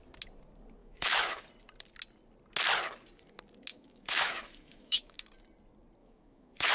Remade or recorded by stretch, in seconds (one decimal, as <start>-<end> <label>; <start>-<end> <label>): 0.0-0.8 recorded; 0.8-1.4 remade; 1.4-3.7 recorded; 3.7-5.2 remade; 5.2-6.0 recorded; 6.0-6.7 remade

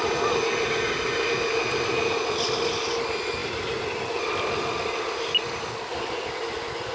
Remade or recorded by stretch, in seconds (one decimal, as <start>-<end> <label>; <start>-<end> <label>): 0.0-6.9 recorded